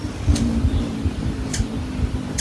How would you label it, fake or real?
real